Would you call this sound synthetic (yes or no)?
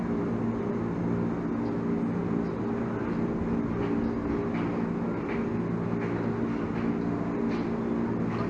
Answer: no